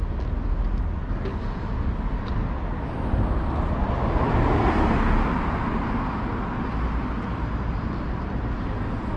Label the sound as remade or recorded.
recorded